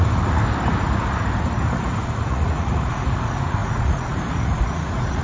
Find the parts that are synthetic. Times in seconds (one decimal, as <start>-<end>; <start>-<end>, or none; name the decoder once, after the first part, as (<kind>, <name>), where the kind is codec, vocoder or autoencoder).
0.0-0.4 (vocoder, Vocos); 1.6-5.2

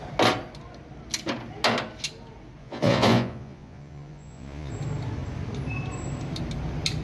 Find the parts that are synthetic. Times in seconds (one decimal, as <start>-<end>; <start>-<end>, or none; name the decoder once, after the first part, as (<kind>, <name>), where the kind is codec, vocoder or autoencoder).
2.6-4.7 (vocoder, Vocos)

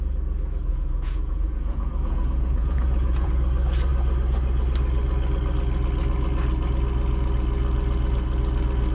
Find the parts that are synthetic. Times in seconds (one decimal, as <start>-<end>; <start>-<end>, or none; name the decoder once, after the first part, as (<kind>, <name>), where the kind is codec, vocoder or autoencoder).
0.7-3.3 (vocoder, Vocos)

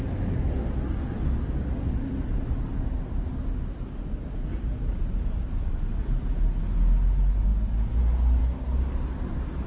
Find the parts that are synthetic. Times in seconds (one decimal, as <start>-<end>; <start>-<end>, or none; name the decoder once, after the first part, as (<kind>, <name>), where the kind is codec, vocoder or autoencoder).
none

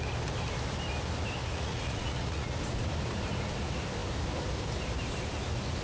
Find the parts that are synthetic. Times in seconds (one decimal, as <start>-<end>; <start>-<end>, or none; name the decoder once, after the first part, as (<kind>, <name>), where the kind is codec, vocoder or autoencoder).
1.5-2.6 (vocoder, Vocos)

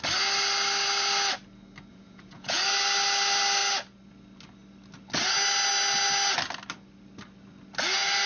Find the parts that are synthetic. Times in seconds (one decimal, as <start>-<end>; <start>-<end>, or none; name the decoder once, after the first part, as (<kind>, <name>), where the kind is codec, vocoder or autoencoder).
1.9-2.6 (vocoder, Vocos)

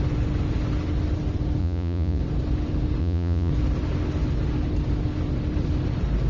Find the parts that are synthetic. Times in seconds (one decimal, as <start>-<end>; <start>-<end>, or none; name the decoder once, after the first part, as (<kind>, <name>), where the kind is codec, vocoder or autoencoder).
1.6-2.2 (vocoder, Vocos); 3.0-3.5